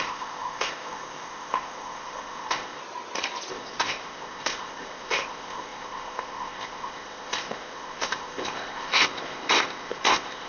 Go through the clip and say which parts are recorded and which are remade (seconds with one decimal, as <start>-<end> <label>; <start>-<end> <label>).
0.0-2.8 remade; 2.8-3.5 recorded; 3.5-10.5 remade